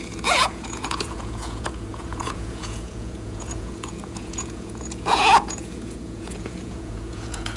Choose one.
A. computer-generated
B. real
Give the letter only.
A